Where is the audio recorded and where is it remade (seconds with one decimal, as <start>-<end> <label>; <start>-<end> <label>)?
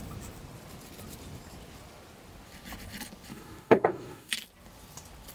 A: 0.0-3.3 recorded; 3.3-4.3 remade; 4.3-5.3 recorded